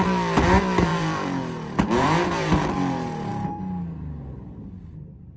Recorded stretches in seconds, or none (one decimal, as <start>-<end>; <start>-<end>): 0.0-0.9; 2.5-5.4